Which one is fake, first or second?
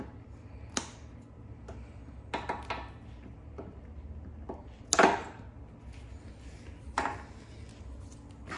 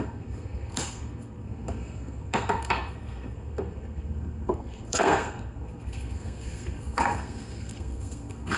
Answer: second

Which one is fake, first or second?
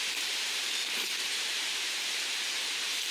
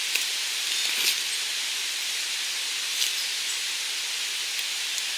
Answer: first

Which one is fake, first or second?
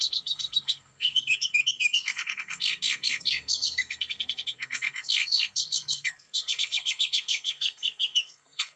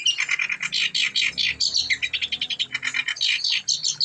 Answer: first